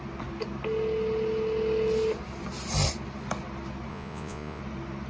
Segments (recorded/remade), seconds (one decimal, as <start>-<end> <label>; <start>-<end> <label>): 0.0-3.9 recorded; 3.9-4.6 remade; 4.6-5.1 recorded